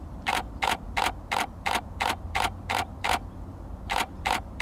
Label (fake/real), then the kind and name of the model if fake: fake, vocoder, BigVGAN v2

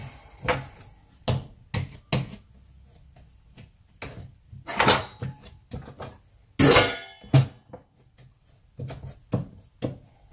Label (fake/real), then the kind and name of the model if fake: real